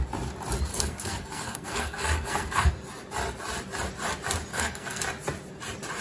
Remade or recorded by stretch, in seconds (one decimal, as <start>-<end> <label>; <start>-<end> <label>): 0.0-0.7 recorded; 0.7-2.7 remade; 2.7-4.5 recorded; 4.5-5.0 remade; 5.0-6.0 recorded